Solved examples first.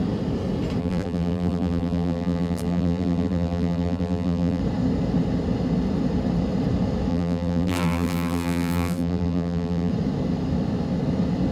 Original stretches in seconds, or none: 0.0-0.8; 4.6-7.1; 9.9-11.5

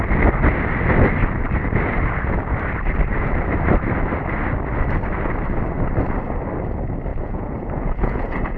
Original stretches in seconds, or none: 0.0-7.1

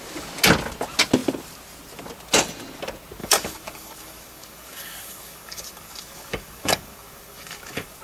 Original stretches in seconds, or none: 0.0-3.2

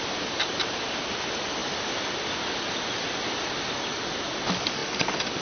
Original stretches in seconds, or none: 0.0-5.4

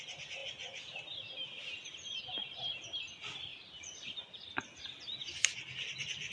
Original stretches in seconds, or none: 0.0-3.5; 4.8-6.3